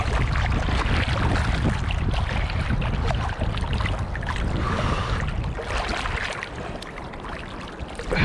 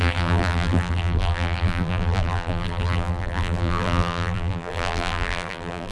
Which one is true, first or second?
first